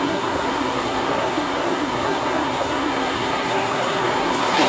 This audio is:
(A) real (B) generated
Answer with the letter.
B